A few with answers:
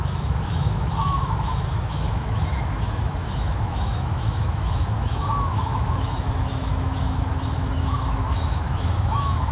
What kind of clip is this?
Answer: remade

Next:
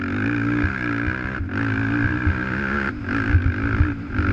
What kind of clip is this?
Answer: recorded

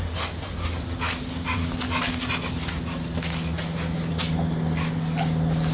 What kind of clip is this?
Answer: recorded